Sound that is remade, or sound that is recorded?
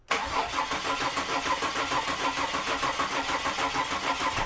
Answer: recorded